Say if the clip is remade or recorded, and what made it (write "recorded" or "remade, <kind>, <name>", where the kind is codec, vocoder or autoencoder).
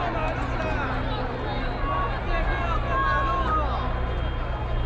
recorded